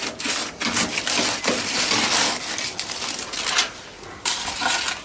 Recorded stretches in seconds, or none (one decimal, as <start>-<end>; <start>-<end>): 0.0-5.0